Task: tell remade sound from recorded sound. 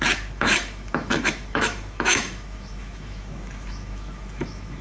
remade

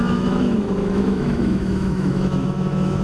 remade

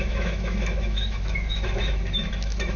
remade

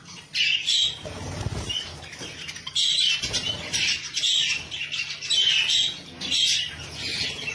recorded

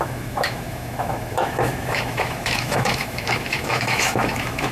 remade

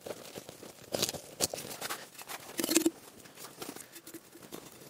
recorded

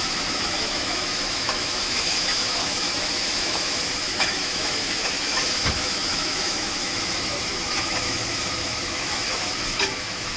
remade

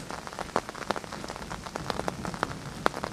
recorded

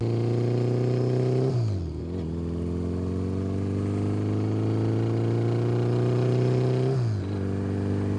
recorded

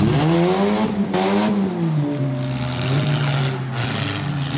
recorded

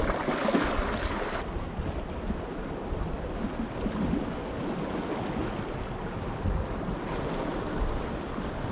recorded